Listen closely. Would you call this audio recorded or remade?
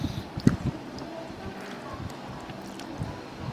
recorded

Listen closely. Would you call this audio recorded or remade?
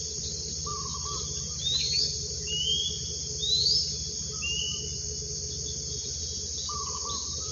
recorded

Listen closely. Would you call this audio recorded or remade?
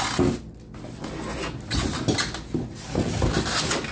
recorded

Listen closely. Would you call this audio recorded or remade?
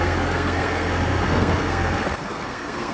remade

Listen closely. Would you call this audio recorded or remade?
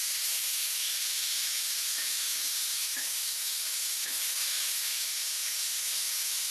remade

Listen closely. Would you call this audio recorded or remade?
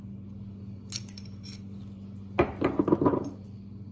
recorded